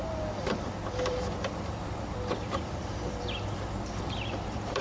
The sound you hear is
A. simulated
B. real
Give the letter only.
A